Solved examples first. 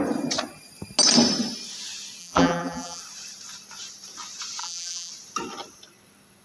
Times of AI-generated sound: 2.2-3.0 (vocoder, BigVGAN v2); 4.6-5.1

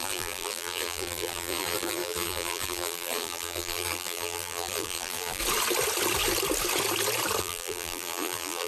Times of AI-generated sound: 0.0-5.4 (vocoder, BigVGAN v2); 7.4-8.7

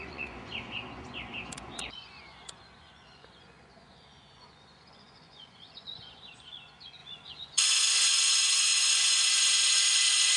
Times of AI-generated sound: 0.0-10.4 (vocoder, Vocos)

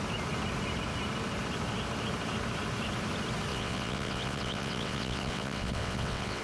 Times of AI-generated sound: 3.5-6.4 (vocoder, WaveNeXt)